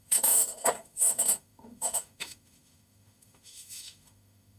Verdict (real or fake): fake